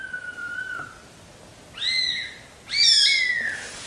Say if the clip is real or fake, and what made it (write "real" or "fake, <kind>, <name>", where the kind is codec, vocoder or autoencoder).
real